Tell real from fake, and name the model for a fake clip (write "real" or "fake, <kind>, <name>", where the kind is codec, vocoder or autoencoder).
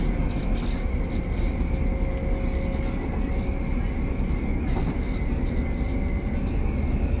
real